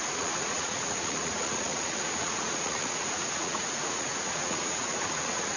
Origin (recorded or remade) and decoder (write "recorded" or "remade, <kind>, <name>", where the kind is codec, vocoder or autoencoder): remade, vocoder, Vocos